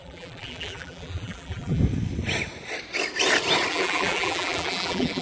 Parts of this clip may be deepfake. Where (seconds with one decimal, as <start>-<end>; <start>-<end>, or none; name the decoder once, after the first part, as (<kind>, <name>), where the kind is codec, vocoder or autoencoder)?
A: 0.0-1.8 (vocoder, BigVGAN v2); 3.7-5.2